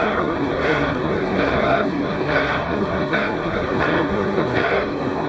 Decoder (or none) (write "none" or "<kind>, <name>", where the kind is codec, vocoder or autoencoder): codec, SNAC